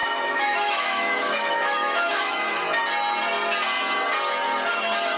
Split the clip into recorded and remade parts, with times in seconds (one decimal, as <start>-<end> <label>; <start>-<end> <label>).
0.0-2.8 remade; 2.8-4.7 recorded; 4.7-5.2 remade